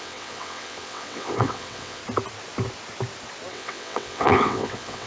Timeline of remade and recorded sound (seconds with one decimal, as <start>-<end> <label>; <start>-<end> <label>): 0.0-2.0 remade; 2.0-3.5 recorded; 3.5-5.1 remade